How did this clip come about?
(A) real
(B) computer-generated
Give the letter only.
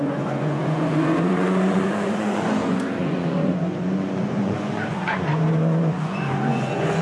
B